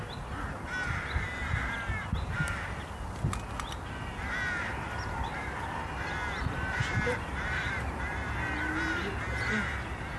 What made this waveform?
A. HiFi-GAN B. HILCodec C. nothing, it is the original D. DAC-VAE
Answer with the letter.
C